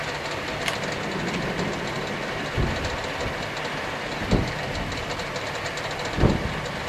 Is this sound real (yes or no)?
yes